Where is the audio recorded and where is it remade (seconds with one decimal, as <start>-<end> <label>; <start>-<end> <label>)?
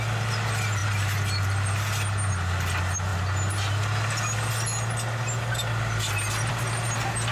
0.0-7.3 recorded